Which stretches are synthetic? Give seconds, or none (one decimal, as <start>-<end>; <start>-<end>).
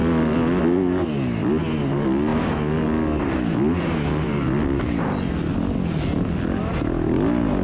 none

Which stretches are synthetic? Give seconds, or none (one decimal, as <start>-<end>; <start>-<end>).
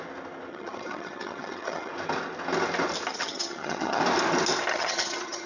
0.5-1.9; 3.1-4.0; 4.7-5.5